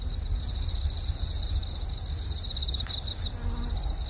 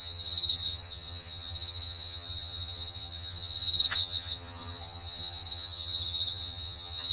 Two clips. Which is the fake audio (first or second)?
second